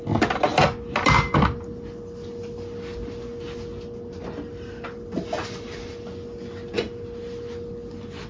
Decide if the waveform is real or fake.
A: real